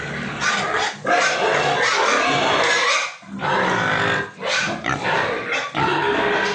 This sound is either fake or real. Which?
real